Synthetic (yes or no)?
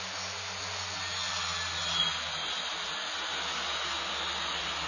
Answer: no